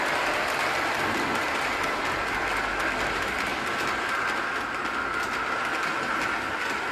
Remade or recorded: recorded